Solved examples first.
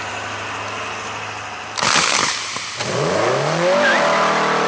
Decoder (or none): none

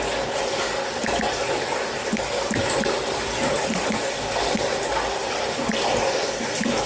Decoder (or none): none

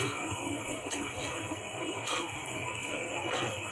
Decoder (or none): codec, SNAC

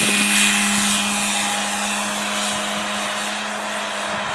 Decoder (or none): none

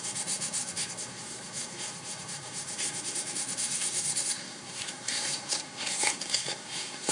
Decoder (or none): codec, SNAC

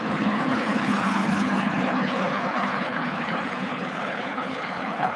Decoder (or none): codec, HILCodec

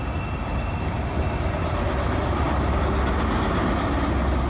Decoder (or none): none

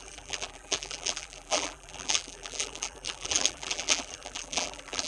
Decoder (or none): vocoder, BigVGAN v2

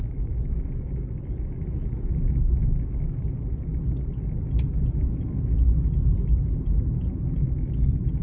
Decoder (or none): none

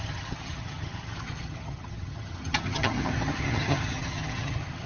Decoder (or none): vocoder, HiFi-GAN